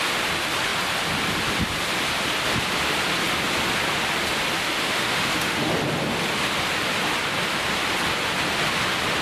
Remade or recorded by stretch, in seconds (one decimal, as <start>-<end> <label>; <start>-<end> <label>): 0.0-4.6 recorded; 4.6-5.7 remade; 5.7-9.2 recorded